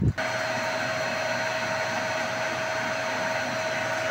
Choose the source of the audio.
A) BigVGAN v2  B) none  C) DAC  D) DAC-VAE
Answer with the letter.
B